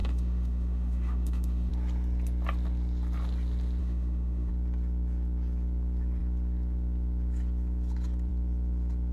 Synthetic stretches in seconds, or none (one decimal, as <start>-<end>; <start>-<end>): 0.0-1.7; 3.8-4.5